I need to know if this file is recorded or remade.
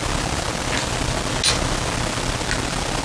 recorded